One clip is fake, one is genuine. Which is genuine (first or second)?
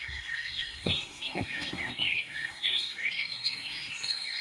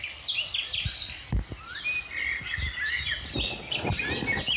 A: second